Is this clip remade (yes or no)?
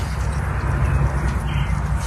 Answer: no